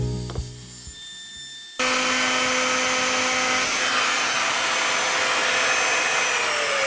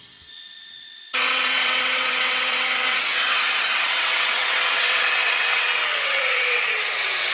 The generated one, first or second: second